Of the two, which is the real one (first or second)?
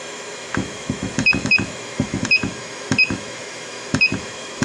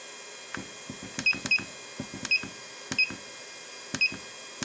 second